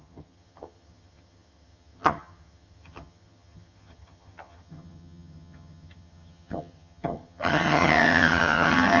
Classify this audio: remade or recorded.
remade